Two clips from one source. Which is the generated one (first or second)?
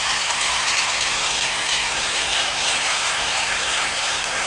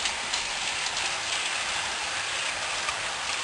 first